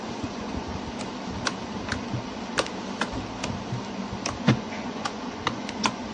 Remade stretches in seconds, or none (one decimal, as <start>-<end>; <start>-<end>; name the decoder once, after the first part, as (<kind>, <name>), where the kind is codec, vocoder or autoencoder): 0.0-0.7 (vocoder, Vocos); 4.4-6.1